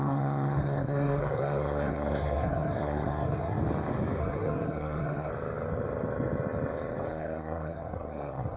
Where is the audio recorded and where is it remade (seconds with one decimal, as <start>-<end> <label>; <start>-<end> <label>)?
0.0-3.6 remade; 3.6-4.2 recorded; 4.2-5.3 remade; 5.3-7.1 recorded; 7.1-8.6 remade